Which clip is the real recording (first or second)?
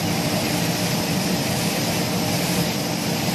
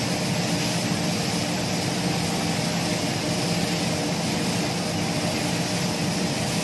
second